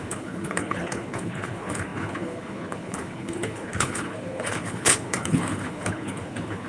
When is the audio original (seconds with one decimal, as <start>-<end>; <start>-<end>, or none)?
none